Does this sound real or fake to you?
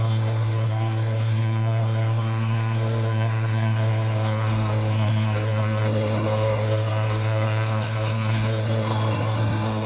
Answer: fake